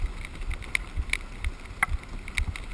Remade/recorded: recorded